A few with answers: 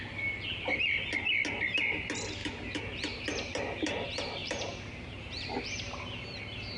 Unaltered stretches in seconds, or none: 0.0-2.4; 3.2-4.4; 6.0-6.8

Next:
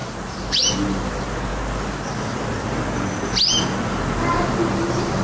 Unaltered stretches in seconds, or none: 1.5-3.9

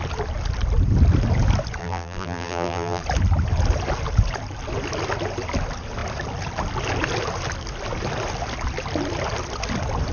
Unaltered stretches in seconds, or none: 0.0-1.8; 3.0-10.1